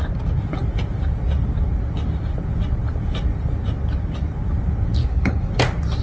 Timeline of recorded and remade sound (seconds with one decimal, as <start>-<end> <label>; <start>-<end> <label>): 0.0-5.0 recorded; 5.0-5.5 remade; 5.5-6.0 recorded

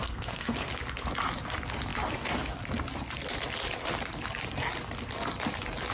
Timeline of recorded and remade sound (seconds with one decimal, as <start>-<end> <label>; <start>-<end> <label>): 0.0-0.7 remade; 0.7-5.9 recorded

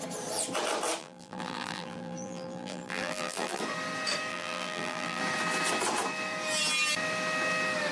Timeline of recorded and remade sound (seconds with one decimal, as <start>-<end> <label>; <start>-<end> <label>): 0.0-1.0 recorded; 1.0-3.6 remade; 3.6-4.3 recorded; 4.3-5.2 remade; 5.2-7.9 recorded

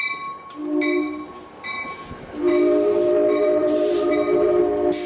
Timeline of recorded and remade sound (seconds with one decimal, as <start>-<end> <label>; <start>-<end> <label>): 0.0-3.6 recorded; 3.6-4.6 remade; 4.6-5.1 recorded

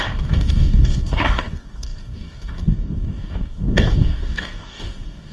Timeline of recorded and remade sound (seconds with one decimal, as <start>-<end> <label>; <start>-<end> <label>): 0.0-5.3 remade

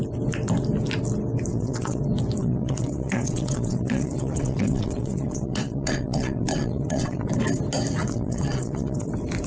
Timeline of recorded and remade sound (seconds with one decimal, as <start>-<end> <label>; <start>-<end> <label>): 0.0-1.5 recorded; 1.5-2.0 remade; 2.0-2.4 recorded; 2.4-7.3 remade; 7.3-8.0 recorded; 8.0-9.1 remade; 9.1-9.5 recorded

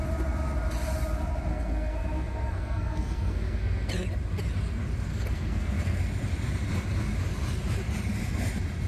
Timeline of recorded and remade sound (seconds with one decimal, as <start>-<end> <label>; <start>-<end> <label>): 0.0-1.5 recorded; 1.5-3.9 remade; 3.9-5.1 recorded; 5.1-6.0 remade; 6.0-8.9 recorded